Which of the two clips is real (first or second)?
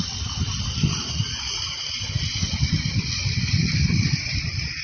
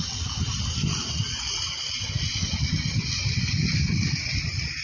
second